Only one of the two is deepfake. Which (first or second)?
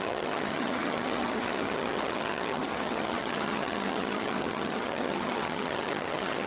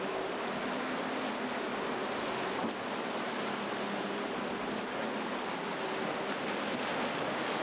first